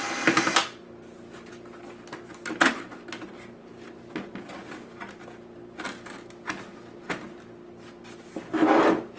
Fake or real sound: real